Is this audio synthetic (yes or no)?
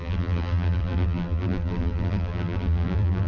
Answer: yes